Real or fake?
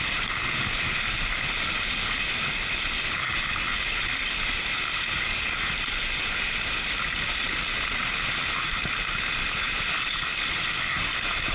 real